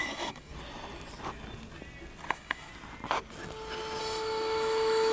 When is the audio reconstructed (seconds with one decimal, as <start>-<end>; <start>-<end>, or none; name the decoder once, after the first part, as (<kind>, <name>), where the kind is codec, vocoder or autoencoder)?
0.0-0.5 (autoencoder, DAC-VAE); 2.3-2.7; 4.0-5.1